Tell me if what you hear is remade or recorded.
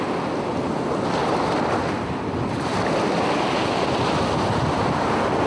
recorded